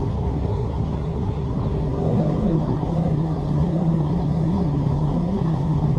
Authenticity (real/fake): fake